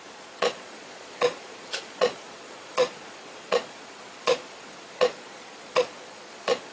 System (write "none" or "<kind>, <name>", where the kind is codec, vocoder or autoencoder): vocoder, Vocos